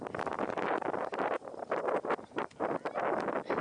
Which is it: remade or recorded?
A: recorded